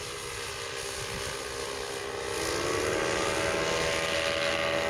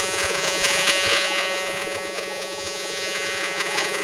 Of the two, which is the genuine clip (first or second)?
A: first